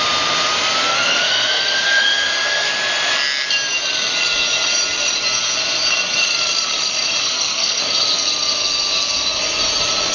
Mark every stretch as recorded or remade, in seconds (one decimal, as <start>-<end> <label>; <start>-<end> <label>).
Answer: 0.0-0.9 recorded; 0.9-2.7 remade; 2.7-7.2 recorded; 7.2-7.8 remade; 7.8-10.1 recorded